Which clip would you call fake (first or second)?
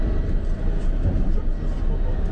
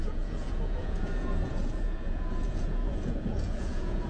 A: second